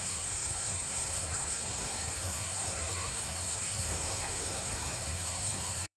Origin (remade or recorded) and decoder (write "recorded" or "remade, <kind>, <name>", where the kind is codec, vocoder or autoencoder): remade, codec, SNAC